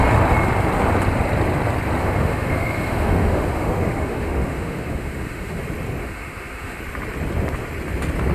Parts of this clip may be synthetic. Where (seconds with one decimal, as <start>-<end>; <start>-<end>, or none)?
2.0-5.6; 6.0-6.8